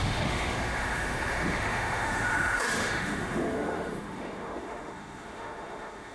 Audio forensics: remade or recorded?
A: remade